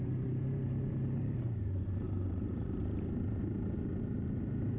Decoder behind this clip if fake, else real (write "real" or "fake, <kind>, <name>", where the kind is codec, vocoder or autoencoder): fake, vocoder, BigVGAN v2